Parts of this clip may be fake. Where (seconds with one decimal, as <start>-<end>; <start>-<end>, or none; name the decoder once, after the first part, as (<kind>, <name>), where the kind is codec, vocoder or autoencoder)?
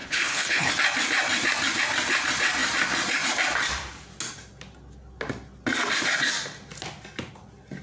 0.0-0.7 (codec, HILCodec)